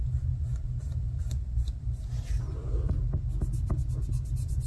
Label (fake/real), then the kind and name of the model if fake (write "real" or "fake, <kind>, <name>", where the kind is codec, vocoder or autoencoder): real